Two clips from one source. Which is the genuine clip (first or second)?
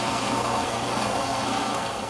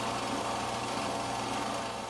second